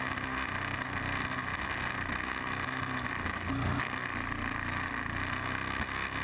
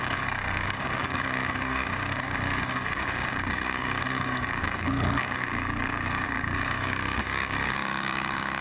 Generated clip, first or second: second